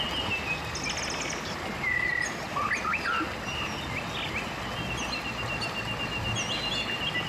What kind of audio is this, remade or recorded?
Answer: recorded